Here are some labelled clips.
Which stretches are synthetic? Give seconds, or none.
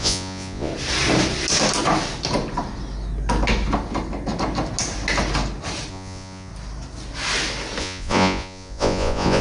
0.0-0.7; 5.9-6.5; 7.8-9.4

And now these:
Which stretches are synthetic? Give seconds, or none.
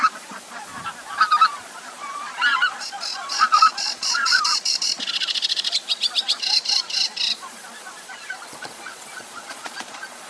0.0-0.7; 1.5-10.3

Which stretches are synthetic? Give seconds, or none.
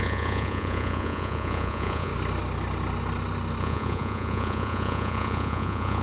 0.0-2.1; 3.6-6.0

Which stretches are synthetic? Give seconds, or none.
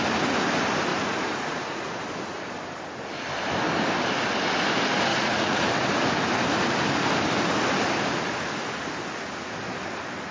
0.9-1.9; 5.1-5.7